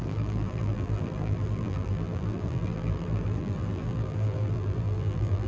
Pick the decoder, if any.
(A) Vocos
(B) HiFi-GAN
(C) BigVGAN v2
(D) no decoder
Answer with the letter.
C